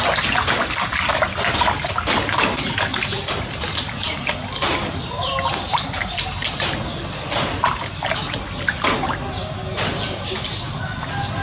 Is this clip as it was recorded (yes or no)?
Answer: yes